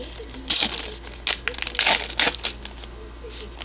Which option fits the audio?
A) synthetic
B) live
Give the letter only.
B